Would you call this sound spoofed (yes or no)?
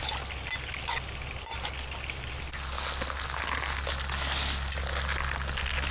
no